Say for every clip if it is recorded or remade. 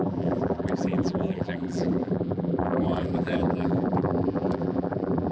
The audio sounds remade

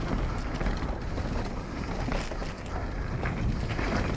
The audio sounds recorded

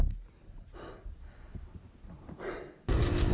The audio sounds recorded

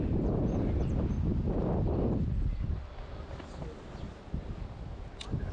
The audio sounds recorded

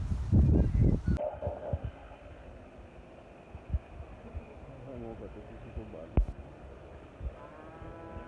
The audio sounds recorded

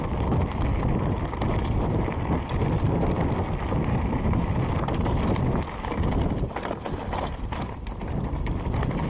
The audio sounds recorded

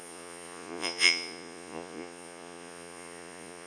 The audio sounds remade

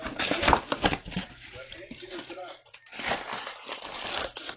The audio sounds remade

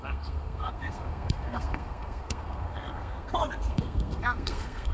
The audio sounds remade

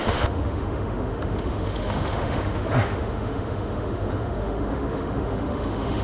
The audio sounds remade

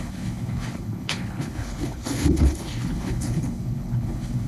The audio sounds remade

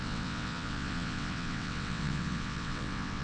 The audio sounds remade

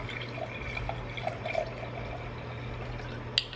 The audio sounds recorded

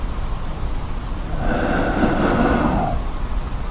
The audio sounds recorded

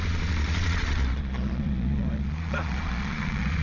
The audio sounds remade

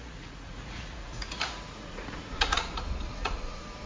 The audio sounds remade